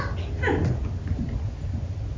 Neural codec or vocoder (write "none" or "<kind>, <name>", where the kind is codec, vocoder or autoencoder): none